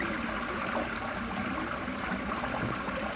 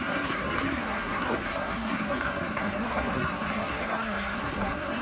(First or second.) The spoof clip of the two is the second